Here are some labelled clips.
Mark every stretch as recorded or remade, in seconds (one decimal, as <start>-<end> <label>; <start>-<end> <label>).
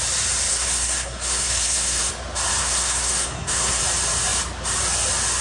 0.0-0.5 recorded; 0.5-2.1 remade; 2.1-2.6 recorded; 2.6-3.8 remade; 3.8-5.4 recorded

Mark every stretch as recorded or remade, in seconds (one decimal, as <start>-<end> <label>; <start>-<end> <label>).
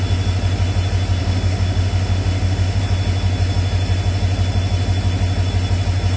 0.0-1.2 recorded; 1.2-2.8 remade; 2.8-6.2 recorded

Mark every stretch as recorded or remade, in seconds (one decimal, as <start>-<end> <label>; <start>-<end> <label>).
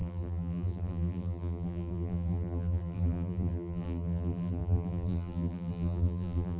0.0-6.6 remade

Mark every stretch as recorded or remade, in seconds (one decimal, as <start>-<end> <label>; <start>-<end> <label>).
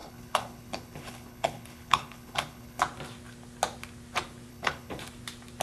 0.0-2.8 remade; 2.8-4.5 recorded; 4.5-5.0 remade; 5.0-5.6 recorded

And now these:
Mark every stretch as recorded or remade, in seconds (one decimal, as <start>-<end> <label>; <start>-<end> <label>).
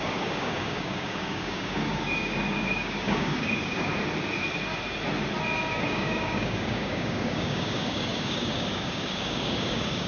0.0-3.9 remade; 3.9-5.7 recorded; 5.7-10.1 remade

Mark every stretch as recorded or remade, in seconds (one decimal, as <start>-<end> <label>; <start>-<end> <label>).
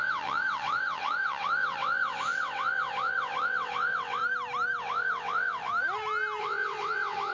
0.0-4.2 remade; 4.2-4.8 recorded; 4.8-5.7 remade; 5.7-6.4 recorded; 6.4-7.3 remade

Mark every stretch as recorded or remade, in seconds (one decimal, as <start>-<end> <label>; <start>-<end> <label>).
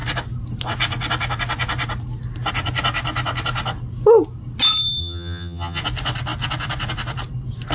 0.0-5.0 recorded; 5.0-5.8 remade; 5.8-7.7 recorded